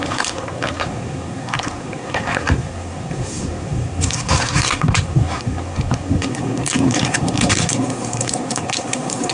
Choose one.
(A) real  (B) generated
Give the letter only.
B